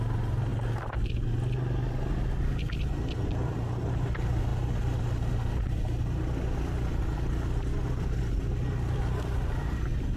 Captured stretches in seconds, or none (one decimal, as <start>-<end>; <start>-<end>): 0.0-10.2